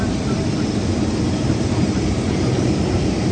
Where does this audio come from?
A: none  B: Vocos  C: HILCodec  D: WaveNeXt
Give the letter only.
A